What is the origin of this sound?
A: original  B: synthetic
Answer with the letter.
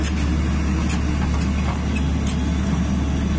A